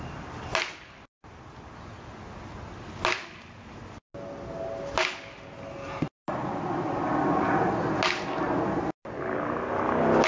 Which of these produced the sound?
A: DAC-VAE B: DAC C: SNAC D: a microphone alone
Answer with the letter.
D